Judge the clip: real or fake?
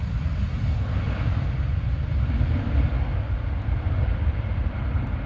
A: real